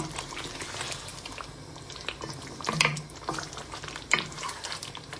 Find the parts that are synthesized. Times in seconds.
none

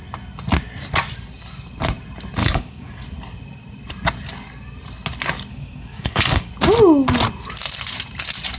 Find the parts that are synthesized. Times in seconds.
2.4-3.0; 5.5-6.5

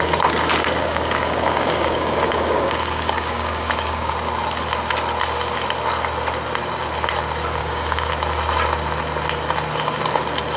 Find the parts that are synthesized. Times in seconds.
0.8-4.1; 7.6-8.1